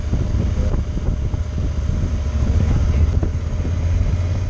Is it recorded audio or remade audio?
recorded